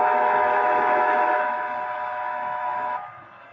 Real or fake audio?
fake